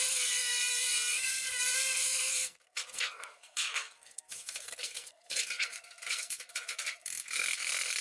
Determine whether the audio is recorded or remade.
remade